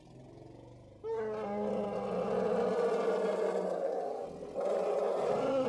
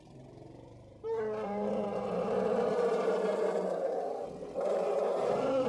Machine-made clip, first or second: second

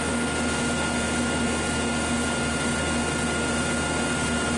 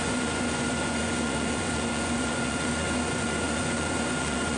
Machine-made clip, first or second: second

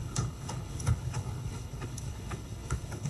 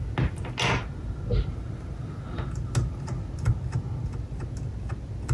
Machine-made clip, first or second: first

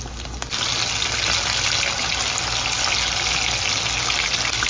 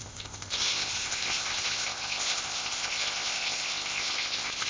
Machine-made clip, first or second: second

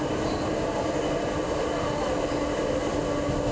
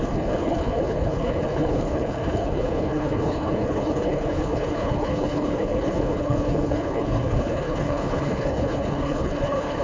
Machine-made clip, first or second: second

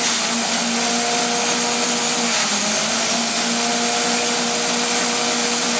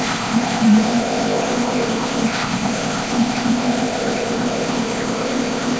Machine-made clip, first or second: second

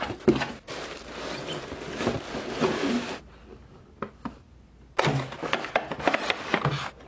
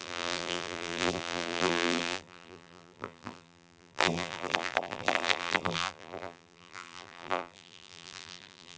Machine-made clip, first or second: second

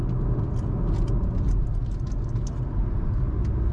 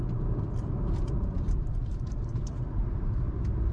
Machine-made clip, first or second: second